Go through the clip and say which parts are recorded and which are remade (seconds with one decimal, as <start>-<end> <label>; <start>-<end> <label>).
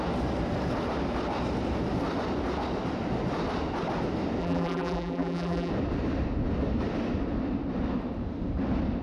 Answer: 0.0-4.4 recorded; 4.4-5.7 remade; 5.7-9.0 recorded